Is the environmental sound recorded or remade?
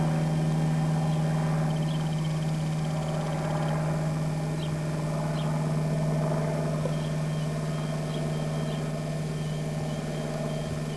recorded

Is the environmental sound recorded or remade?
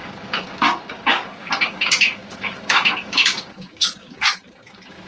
remade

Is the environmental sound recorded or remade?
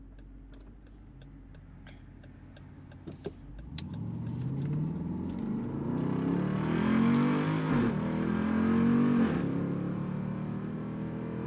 recorded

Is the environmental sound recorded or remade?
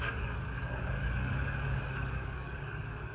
remade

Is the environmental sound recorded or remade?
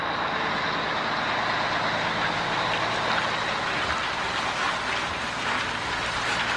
recorded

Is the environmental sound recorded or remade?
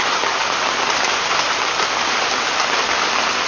recorded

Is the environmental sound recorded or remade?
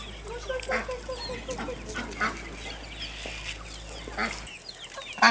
recorded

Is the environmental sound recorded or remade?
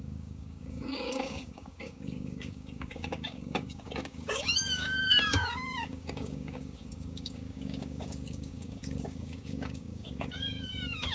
remade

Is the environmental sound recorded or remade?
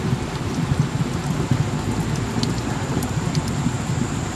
recorded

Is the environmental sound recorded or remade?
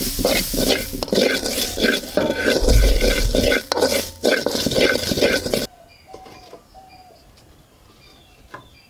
recorded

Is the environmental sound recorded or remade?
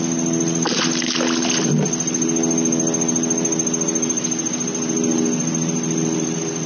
recorded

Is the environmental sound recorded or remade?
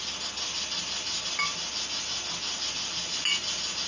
recorded